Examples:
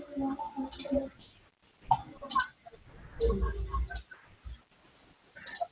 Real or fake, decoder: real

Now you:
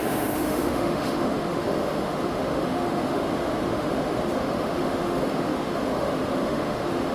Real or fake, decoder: fake, autoencoder, DAC-VAE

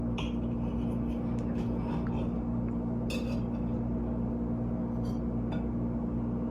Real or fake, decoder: real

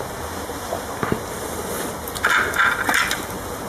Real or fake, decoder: real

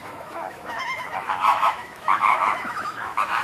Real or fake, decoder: fake, autoencoder, DAC-VAE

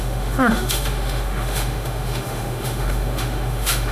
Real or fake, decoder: fake, autoencoder, DAC-VAE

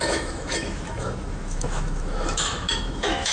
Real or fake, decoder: fake, autoencoder, DAC-VAE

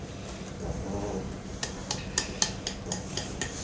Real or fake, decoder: real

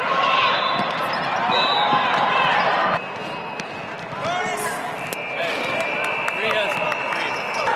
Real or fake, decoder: real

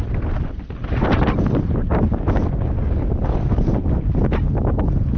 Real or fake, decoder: real